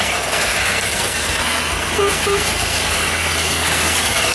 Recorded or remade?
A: remade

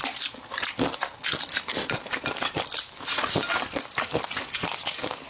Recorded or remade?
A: recorded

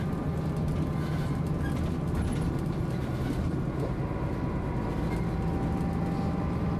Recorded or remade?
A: recorded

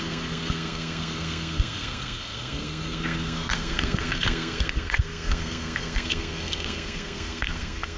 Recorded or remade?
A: remade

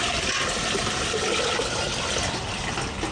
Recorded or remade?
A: recorded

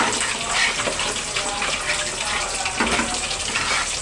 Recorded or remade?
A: recorded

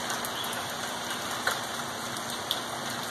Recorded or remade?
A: recorded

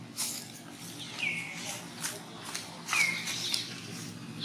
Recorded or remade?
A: recorded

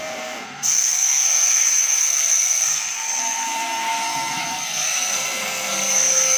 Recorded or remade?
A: remade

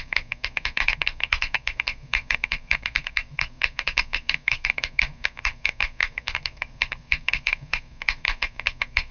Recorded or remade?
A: remade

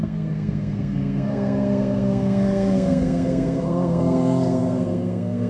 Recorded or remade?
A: remade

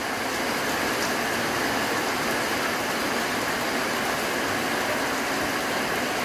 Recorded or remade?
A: recorded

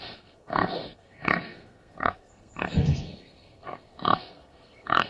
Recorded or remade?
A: remade